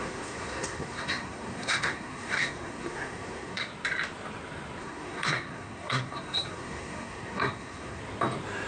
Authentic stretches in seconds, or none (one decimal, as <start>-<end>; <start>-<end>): 3.7-4.8; 8.0-8.7